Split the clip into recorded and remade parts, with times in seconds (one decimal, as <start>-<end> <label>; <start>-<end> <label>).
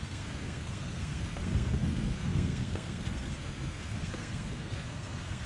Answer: 0.0-5.5 remade